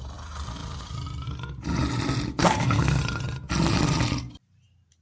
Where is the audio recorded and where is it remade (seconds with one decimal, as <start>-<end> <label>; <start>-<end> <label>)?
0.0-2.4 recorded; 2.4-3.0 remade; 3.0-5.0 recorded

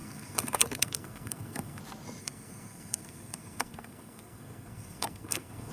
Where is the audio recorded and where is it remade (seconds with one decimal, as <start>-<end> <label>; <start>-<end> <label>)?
0.0-1.8 remade; 1.8-2.2 recorded; 2.2-5.7 remade

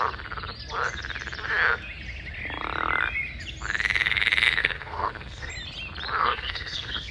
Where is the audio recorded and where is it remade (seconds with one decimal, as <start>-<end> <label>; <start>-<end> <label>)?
0.0-4.6 recorded; 4.6-5.5 remade; 5.5-6.2 recorded; 6.2-7.1 remade

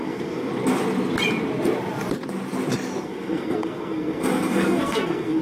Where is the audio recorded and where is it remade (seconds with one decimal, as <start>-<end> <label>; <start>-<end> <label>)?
0.0-0.5 remade; 0.5-3.0 recorded; 3.0-5.4 remade

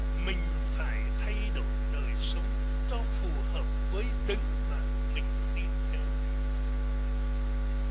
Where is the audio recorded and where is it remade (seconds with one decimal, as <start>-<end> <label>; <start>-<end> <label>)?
0.0-7.9 recorded